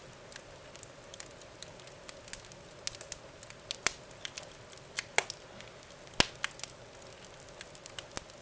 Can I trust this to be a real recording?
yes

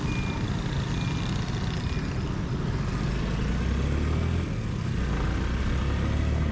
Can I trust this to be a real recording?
yes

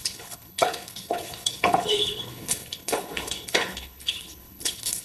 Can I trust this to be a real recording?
no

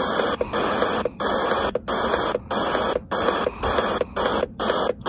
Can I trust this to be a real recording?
yes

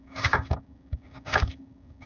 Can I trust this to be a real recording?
no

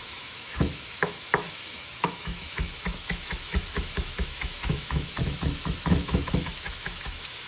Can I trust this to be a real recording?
no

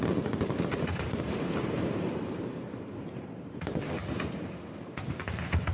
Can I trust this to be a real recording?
no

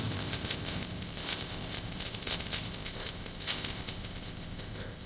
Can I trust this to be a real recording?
no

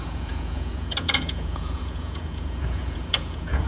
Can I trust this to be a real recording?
no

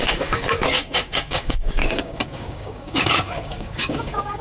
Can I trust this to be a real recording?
no